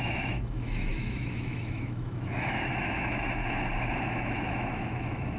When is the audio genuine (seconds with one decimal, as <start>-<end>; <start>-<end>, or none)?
3.4-4.0